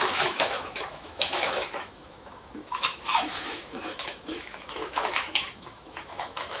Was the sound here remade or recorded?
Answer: remade